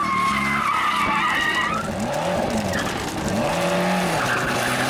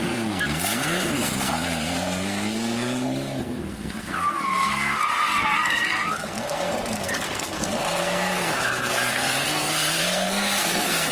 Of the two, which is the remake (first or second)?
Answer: second